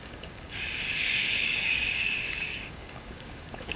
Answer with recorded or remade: remade